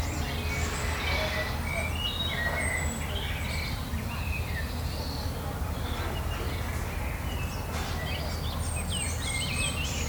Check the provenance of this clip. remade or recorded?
recorded